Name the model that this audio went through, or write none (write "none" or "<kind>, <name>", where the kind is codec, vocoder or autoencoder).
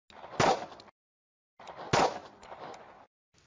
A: none